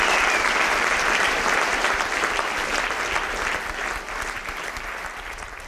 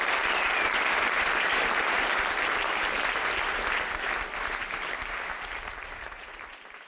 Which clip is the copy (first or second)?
second